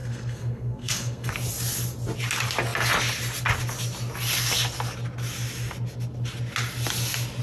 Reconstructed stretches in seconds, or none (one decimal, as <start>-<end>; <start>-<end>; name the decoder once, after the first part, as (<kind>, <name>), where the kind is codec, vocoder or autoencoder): 0.0-1.3 (codec, SNAC)

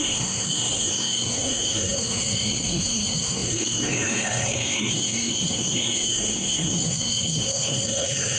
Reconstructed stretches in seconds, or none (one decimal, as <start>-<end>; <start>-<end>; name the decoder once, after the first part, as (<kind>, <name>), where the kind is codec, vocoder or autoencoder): 0.0-8.4 (codec, SNAC)

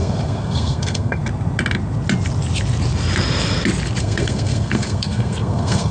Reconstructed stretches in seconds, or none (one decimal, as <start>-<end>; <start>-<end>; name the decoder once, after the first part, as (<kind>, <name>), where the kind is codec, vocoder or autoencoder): 0.0-1.2 (codec, SNAC); 4.0-5.9

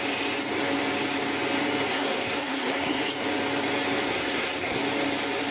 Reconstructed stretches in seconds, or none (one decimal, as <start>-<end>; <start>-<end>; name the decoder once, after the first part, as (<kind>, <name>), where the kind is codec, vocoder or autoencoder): 1.9-3.0 (codec, SNAC); 4.1-4.8